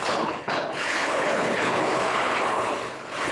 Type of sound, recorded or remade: remade